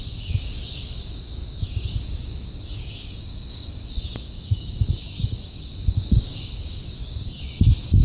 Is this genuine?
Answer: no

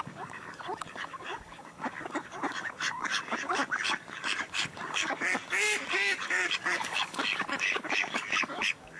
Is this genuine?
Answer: no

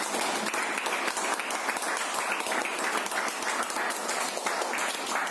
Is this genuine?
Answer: yes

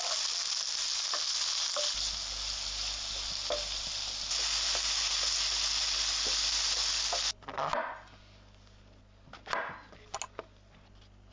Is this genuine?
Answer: yes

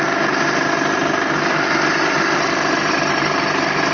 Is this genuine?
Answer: yes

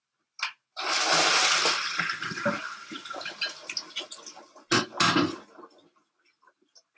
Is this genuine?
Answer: yes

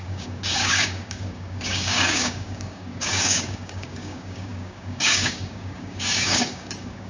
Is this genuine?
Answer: no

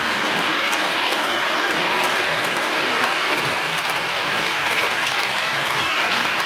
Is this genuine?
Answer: no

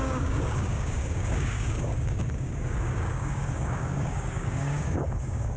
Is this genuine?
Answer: no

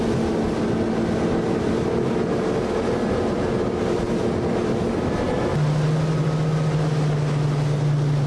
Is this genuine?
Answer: yes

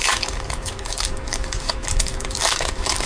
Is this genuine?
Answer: no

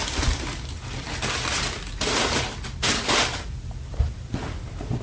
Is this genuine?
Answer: yes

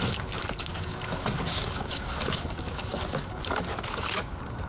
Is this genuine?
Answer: no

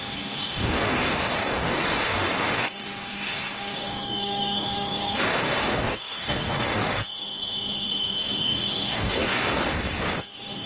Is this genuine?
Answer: no